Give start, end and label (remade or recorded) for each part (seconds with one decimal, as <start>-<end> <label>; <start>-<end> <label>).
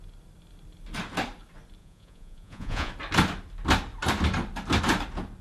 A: 0.0-1.8 recorded; 1.8-2.9 remade; 2.9-5.4 recorded